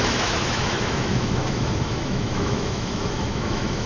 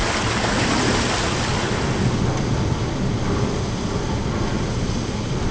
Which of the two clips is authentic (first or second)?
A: second